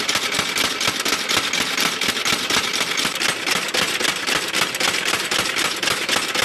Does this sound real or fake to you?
real